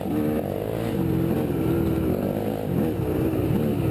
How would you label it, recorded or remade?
recorded